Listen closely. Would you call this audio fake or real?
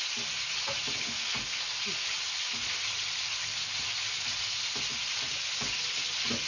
real